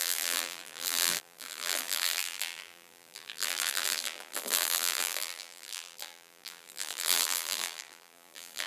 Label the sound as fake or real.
fake